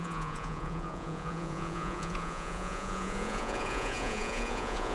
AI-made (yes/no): yes